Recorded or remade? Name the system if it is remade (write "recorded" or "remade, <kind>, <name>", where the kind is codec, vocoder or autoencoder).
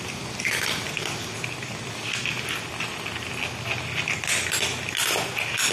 recorded